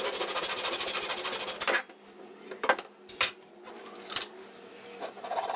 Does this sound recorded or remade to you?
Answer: recorded